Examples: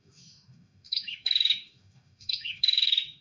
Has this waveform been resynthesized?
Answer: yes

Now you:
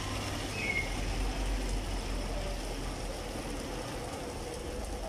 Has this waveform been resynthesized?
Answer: no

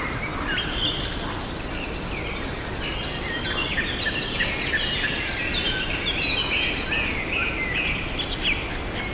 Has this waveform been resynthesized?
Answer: no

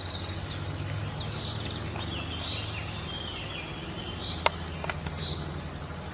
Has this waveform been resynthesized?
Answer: no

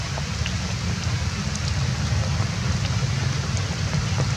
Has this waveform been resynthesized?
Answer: no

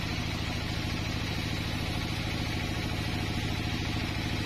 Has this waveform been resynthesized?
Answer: no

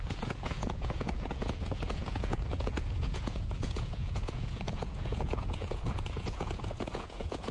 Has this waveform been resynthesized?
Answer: yes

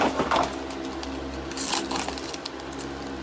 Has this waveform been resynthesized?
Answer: no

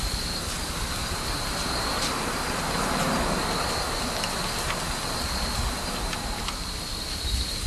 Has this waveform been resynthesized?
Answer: yes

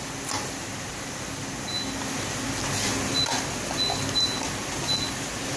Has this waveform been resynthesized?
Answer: no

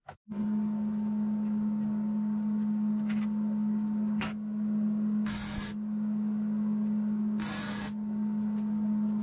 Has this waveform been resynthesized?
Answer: no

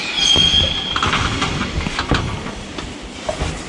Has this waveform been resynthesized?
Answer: no